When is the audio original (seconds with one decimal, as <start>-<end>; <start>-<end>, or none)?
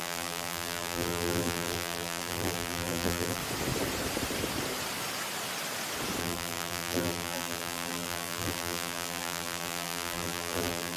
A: 3.4-6.2